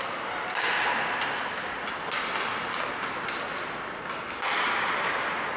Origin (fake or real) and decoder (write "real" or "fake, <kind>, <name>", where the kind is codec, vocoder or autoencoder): real